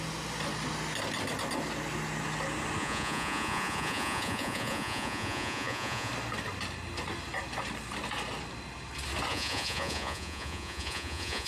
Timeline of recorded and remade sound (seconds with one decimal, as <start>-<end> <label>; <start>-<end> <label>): 0.0-2.8 recorded; 2.8-6.1 remade; 6.1-9.3 recorded; 9.3-11.5 remade